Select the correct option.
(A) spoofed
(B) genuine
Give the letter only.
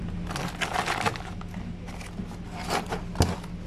B